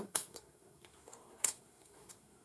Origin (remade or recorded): remade